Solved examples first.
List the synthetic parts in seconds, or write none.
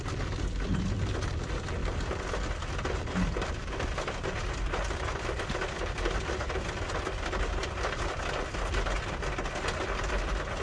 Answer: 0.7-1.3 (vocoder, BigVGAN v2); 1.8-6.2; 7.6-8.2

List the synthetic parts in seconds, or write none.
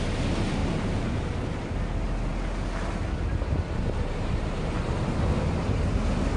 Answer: 0.6-1.4 (vocoder, BigVGAN v2)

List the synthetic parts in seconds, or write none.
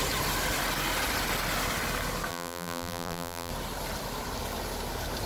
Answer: 2.3-3.5 (vocoder, BigVGAN v2)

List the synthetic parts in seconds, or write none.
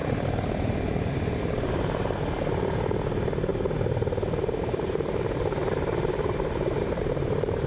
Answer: 1.4-3.5 (vocoder, BigVGAN v2); 4.6-7.7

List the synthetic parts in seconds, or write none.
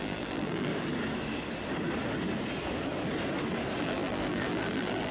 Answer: 0.0-0.7 (vocoder, BigVGAN v2); 3.8-5.1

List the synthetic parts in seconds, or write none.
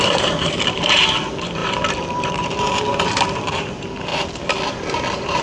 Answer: 0.0-5.4 (vocoder, BigVGAN v2)